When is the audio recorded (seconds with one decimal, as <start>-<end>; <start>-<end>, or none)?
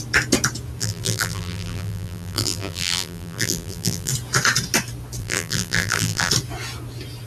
0.0-0.8; 4.1-5.2; 6.3-7.3